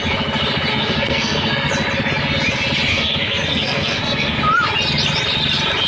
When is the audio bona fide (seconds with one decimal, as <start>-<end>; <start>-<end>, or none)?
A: 0.0-0.7; 1.7-2.9; 4.4-5.9